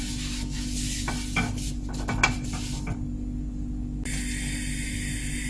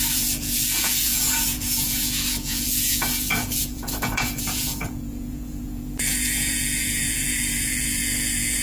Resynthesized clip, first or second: second